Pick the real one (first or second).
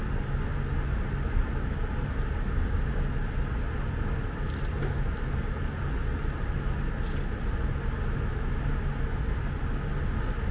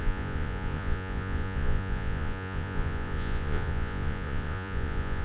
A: first